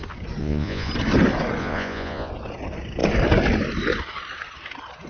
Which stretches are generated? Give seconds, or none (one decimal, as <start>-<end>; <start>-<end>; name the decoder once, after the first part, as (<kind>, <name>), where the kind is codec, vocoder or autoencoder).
0.4-0.9 (vocoder, Vocos); 1.6-2.3